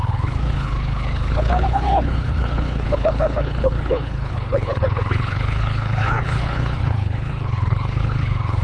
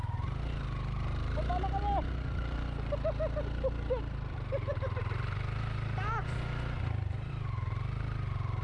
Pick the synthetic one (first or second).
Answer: first